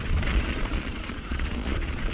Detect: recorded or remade remade